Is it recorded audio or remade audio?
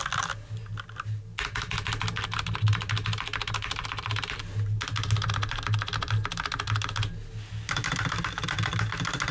recorded